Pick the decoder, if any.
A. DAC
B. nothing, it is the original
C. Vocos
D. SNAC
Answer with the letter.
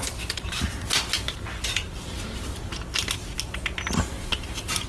B